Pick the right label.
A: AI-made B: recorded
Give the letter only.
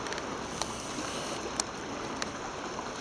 B